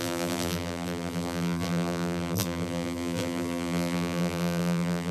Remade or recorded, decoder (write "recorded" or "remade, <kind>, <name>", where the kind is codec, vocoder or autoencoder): remade, vocoder, BigVGAN v2